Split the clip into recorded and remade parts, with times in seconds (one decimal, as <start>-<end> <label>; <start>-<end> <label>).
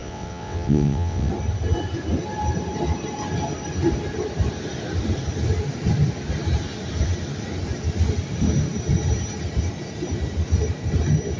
0.0-1.3 remade; 1.3-11.4 recorded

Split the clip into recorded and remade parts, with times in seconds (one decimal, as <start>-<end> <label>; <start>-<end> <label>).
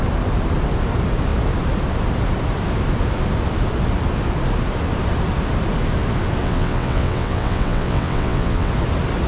0.0-6.4 recorded; 6.4-8.7 remade; 8.7-9.3 recorded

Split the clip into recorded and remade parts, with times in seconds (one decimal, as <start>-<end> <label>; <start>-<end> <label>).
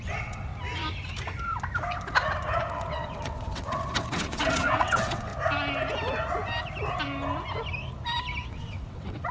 0.0-0.5 remade; 0.5-2.7 recorded; 2.7-5.3 remade; 5.3-8.5 recorded; 8.5-9.3 remade